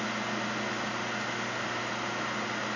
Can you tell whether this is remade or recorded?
recorded